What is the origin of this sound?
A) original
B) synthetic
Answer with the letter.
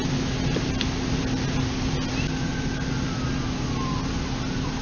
A